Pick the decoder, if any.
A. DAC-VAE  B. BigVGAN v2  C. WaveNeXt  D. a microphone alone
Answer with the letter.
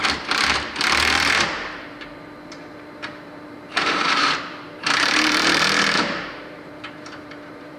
B